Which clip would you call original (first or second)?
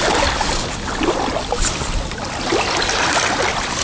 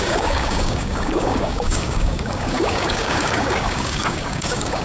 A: first